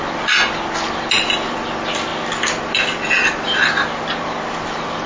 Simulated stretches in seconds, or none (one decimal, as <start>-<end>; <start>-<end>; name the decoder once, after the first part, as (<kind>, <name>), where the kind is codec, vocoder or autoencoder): none